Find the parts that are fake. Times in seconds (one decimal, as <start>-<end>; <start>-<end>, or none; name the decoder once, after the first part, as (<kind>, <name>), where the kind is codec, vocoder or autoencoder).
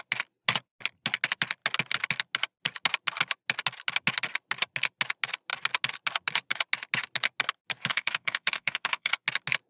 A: 7.9-9.1 (autoencoder, DAC-VAE)